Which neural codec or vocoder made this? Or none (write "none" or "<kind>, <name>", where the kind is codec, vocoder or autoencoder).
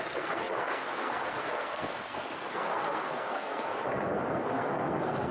codec, SNAC